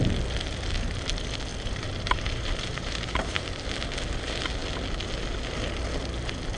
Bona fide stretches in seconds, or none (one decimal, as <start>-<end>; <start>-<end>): 0.0-1.5; 3.4-6.6